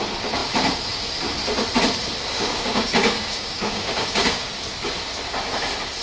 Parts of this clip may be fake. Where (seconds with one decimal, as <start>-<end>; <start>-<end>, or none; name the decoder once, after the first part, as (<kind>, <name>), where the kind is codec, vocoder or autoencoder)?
2.3-4.5 (codec, DAC)